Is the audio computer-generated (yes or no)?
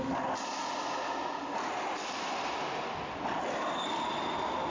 no